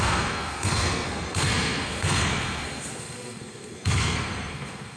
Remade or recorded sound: remade